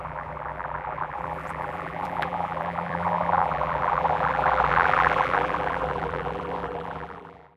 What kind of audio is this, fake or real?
fake